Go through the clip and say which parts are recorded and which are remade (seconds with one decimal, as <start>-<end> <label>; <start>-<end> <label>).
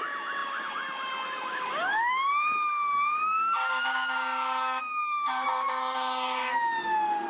0.0-7.3 remade